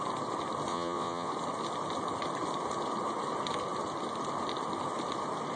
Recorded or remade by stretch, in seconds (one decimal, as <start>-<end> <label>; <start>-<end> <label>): 0.0-0.7 recorded; 0.7-1.3 remade; 1.3-5.6 recorded